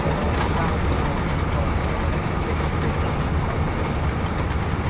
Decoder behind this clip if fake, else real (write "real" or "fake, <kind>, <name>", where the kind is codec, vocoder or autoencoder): real